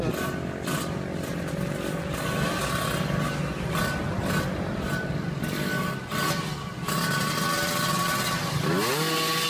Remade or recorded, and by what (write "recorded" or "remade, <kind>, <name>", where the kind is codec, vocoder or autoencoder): recorded